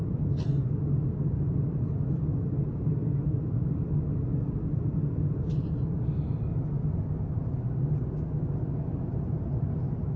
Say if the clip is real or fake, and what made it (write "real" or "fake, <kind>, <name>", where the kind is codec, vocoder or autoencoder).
real